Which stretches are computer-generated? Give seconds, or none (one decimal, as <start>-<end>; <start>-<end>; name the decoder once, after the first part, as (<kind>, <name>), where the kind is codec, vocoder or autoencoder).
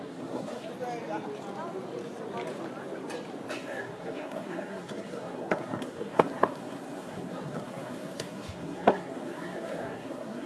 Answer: 0.0-0.7 (codec, SNAC); 3.5-10.5